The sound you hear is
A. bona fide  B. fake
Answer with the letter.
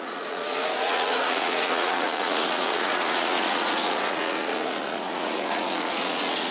B